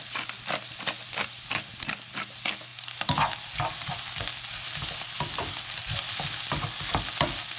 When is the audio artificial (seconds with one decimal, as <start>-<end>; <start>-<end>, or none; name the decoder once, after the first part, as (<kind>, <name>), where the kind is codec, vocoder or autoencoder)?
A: none